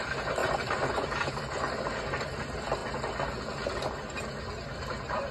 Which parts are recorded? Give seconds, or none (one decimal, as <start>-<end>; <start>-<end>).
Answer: 0.0-0.4; 1.9-5.3